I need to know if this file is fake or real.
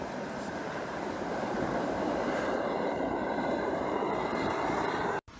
fake